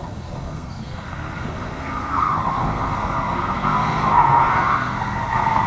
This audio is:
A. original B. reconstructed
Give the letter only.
B